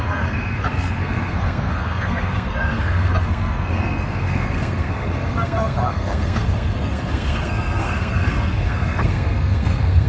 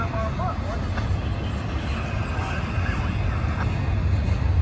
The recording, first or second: second